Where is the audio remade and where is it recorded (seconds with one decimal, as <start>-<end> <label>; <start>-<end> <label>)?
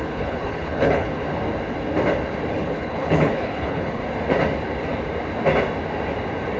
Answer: 0.0-1.2 remade; 1.2-2.6 recorded; 2.6-4.0 remade; 4.0-6.6 recorded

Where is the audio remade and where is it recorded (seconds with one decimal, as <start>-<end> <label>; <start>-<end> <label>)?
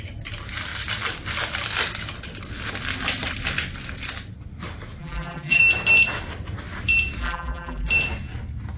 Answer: 0.0-5.0 recorded; 5.0-5.6 remade; 5.6-7.2 recorded; 7.2-7.9 remade; 7.9-8.8 recorded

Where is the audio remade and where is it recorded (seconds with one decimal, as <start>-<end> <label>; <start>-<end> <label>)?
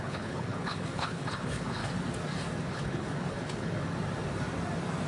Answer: 0.0-1.8 remade; 1.8-2.7 recorded; 2.7-3.8 remade; 3.8-5.1 recorded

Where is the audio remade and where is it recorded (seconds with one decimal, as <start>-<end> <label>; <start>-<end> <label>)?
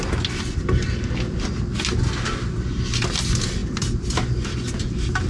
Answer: 0.0-5.3 recorded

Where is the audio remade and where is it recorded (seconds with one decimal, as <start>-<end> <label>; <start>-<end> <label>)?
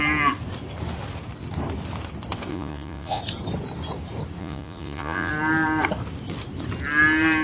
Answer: 0.0-2.5 recorded; 2.5-3.2 remade; 3.2-4.4 recorded; 4.4-5.3 remade; 5.3-7.4 recorded